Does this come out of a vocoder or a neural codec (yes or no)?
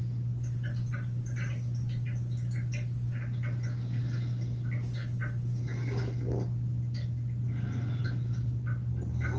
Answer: no